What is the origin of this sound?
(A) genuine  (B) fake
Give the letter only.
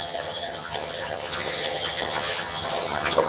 B